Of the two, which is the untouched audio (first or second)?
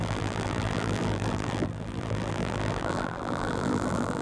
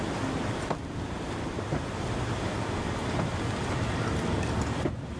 second